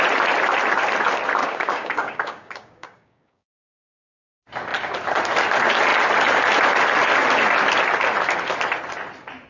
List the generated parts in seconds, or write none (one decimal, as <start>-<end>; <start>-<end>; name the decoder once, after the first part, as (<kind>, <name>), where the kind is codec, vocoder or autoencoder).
1.4-3.6 (codec, DAC)